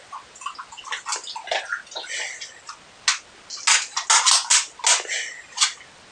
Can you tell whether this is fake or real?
real